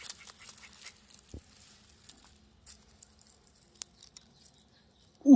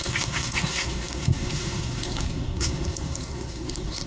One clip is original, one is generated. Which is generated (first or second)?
second